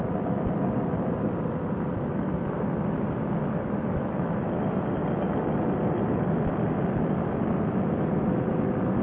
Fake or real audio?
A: real